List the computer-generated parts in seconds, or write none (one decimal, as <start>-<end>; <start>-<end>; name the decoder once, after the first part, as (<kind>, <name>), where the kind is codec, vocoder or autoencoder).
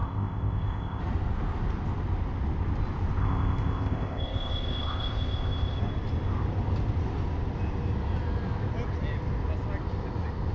0.0-1.0 (codec, ZipCodec); 3.2-5.8